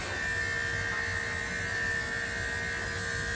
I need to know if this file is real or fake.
real